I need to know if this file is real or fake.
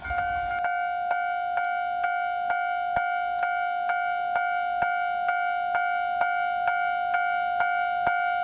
real